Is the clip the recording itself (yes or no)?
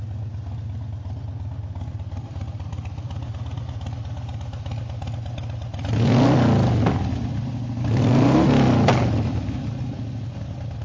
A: yes